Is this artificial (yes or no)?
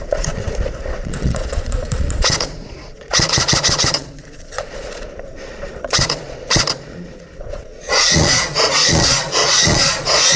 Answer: yes